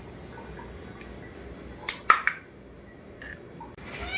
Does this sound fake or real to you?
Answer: real